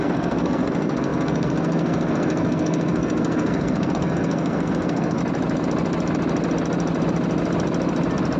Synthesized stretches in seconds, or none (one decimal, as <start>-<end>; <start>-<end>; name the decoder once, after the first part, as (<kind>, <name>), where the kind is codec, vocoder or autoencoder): 0.0-5.2 (codec, SNAC)